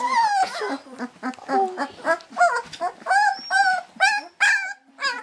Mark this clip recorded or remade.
recorded